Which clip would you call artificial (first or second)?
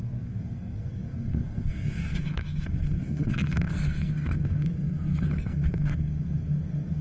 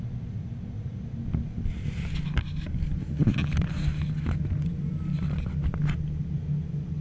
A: first